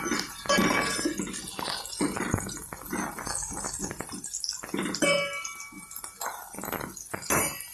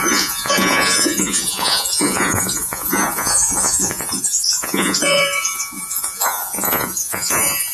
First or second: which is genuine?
first